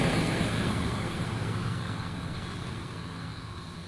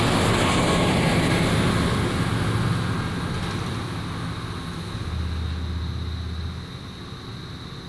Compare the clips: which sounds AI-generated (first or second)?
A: first